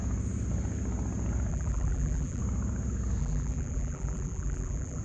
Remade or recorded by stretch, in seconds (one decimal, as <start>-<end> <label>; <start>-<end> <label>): 0.0-1.5 recorded; 1.5-2.4 remade; 2.4-3.2 recorded; 3.2-5.0 remade